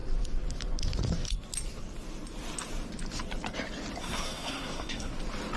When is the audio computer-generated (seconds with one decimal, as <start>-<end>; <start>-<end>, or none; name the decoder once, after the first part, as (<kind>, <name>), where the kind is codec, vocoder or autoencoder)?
4.0-5.1 (codec, SNAC)